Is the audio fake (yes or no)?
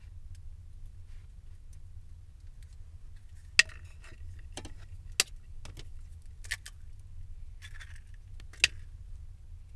no